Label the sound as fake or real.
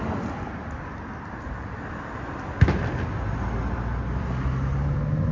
real